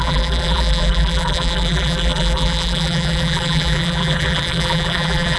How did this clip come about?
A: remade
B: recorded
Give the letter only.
A